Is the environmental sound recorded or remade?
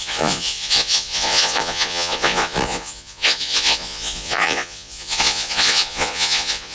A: remade